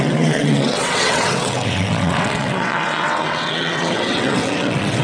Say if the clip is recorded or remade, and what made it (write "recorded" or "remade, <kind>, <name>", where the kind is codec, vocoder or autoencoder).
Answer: remade, vocoder, WaveNeXt